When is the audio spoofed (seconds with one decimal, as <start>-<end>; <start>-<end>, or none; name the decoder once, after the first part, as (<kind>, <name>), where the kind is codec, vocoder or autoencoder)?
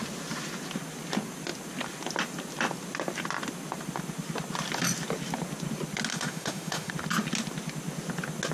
6.1-6.9 (autoencoder, DAC-VAE)